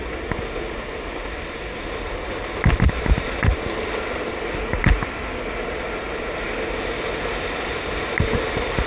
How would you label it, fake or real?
real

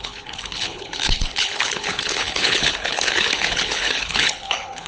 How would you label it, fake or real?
fake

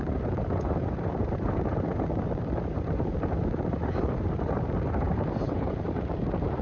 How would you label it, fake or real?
fake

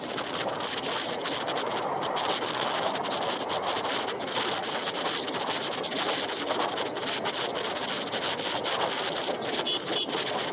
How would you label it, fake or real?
real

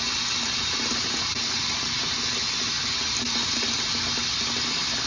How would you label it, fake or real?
real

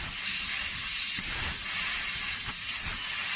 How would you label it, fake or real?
real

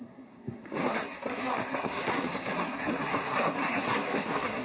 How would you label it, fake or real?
fake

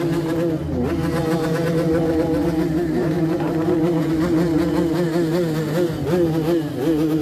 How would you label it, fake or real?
real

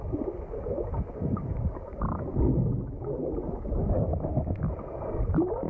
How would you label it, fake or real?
real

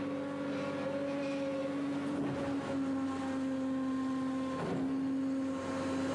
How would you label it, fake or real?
real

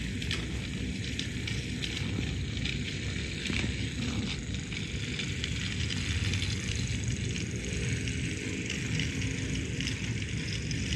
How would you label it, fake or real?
real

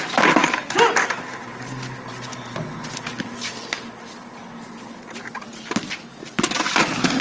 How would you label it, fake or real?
real